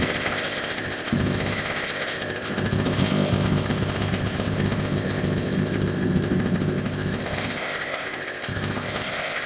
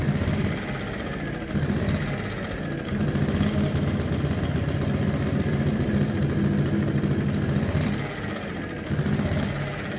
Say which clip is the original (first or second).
second